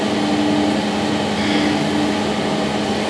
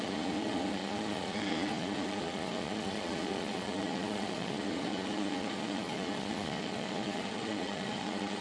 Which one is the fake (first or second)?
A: second